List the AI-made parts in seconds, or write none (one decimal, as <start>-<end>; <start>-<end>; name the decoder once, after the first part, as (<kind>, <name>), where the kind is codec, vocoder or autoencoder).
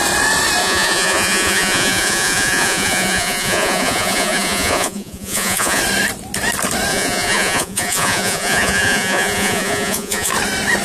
0.6-5.8 (vocoder, Vocos); 6.9-10.3